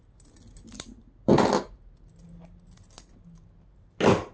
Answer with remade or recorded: recorded